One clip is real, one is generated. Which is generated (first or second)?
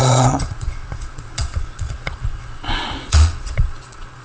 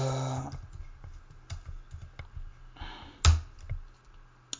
first